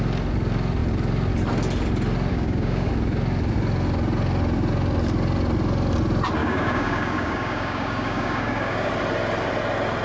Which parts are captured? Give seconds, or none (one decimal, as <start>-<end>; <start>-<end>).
0.0-2.3; 2.9-6.4; 8.9-10.0